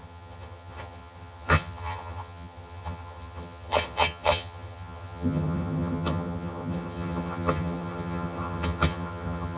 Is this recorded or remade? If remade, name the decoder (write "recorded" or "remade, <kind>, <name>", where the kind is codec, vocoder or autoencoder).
remade, vocoder, HiFi-GAN